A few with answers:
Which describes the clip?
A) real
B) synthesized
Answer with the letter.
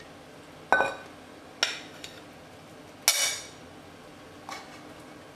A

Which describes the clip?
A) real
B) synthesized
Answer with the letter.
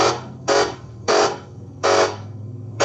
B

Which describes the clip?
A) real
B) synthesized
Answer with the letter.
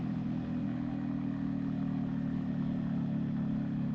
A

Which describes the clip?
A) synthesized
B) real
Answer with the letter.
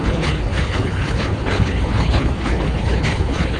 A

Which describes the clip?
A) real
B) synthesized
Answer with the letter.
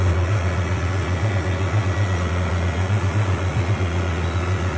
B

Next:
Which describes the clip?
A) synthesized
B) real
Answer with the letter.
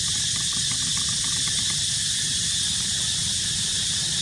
B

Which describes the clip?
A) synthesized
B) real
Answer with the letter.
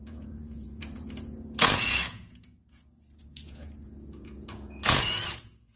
A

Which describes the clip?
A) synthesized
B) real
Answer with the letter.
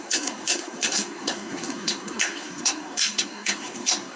A